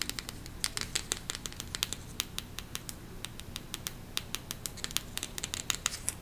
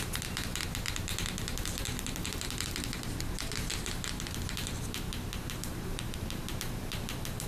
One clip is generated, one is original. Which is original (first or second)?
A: first